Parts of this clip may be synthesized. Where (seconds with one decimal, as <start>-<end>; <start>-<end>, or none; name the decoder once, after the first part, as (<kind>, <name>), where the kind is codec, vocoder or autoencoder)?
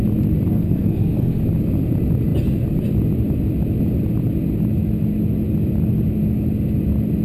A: 0.5-1.4 (codec, SNAC)